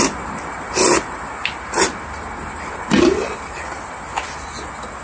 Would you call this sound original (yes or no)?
yes